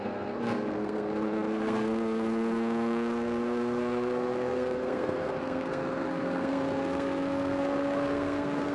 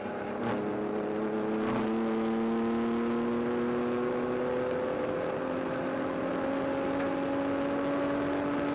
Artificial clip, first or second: first